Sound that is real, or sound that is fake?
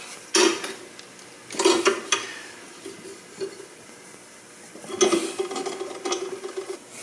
real